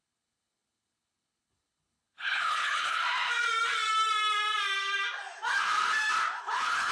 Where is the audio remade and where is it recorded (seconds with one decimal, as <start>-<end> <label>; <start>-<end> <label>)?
0.0-3.0 remade; 3.0-6.4 recorded; 6.4-6.9 remade